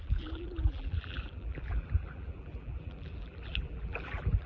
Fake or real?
fake